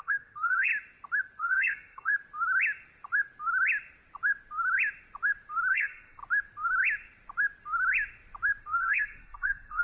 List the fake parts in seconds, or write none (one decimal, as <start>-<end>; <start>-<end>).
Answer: 0.0-0.7; 1.4-2.1; 5.7-6.2; 8.6-9.8